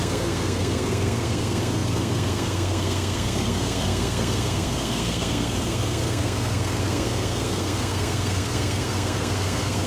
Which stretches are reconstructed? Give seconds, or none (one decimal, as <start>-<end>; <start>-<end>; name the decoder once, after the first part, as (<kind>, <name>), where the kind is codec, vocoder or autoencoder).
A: 0.0-9.9 (codec, SNAC)